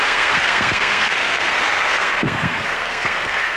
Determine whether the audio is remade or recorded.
remade